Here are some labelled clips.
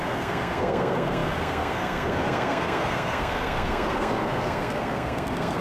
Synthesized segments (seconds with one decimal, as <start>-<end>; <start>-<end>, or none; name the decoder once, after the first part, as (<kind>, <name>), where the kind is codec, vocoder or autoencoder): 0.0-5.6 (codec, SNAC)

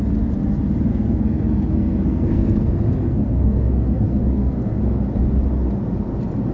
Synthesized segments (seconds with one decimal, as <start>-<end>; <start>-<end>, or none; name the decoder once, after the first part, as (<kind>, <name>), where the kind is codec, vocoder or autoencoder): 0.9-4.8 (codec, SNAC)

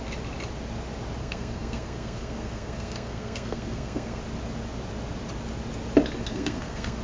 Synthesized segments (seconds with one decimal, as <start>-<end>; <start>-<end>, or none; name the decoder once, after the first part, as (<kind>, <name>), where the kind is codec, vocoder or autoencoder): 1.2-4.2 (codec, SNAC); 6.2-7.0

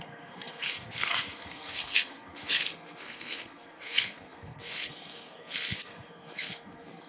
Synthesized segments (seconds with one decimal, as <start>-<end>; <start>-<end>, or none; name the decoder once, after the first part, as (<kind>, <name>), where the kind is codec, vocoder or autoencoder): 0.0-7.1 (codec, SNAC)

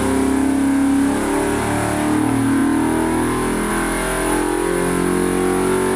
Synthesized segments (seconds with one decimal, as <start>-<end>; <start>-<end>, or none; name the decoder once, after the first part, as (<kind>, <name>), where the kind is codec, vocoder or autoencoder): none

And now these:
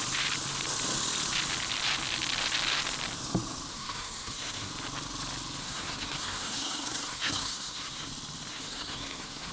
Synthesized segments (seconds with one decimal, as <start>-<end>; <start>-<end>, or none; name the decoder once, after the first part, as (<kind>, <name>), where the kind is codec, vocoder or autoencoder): 3.7-4.7 (codec, SNAC); 5.6-8.1; 8.5-9.5

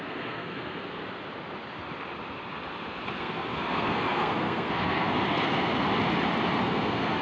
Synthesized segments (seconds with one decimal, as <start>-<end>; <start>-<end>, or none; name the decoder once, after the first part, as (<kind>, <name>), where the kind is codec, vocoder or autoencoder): 0.0-1.0 (codec, SNAC); 3.2-5.9; 6.6-7.2

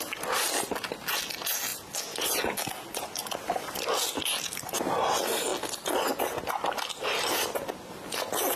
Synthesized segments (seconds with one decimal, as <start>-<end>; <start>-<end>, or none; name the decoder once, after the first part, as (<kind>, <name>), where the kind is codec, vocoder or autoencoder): none